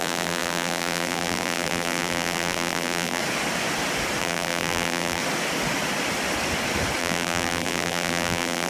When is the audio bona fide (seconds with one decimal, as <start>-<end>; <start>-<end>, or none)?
3.2-4.2; 5.2-7.0